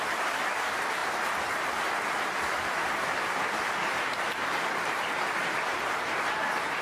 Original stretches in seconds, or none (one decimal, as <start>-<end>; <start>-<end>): 0.0-2.7; 5.2-6.8